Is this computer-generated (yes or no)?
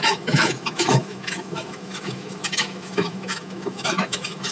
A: yes